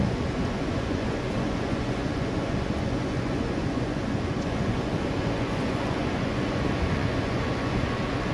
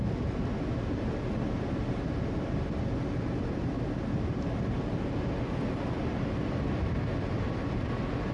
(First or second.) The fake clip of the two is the first